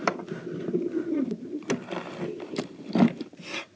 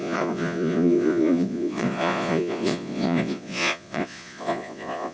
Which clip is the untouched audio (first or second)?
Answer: first